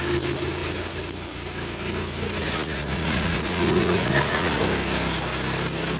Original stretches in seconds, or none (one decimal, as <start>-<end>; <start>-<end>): 0.0-2.4; 4.6-6.0